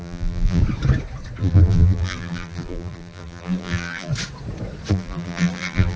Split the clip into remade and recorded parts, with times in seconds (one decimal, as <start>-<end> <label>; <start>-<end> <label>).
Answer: 0.0-0.6 remade; 0.6-1.4 recorded; 1.4-4.1 remade; 4.1-4.9 recorded; 4.9-6.0 remade